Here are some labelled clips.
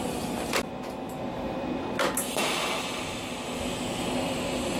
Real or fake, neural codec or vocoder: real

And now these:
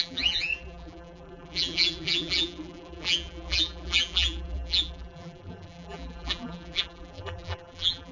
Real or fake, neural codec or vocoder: fake, vocoder, BigVGAN v2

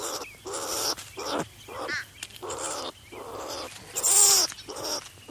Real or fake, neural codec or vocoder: real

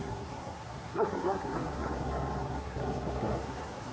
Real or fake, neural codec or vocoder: fake, codec, SNAC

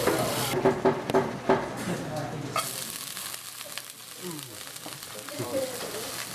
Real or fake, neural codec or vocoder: real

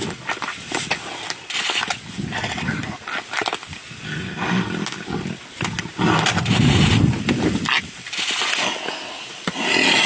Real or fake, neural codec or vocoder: real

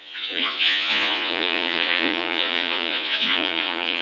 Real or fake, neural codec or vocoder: fake, vocoder, Vocos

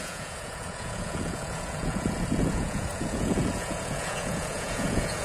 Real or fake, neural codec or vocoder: fake, vocoder, Vocos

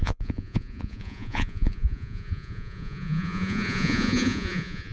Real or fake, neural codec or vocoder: fake, vocoder, Vocos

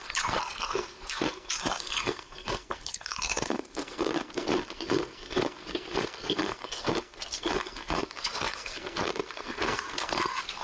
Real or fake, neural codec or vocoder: fake, codec, SNAC